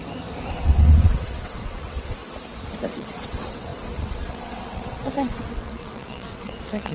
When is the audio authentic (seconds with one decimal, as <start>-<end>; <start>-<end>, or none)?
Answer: 0.0-0.5; 2.2-2.9